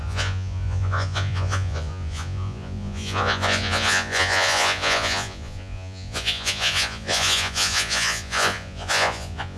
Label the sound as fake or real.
fake